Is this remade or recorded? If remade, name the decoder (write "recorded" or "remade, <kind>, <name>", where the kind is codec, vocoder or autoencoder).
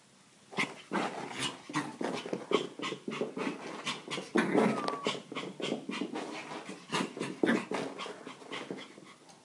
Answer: recorded